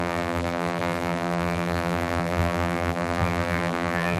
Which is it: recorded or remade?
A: remade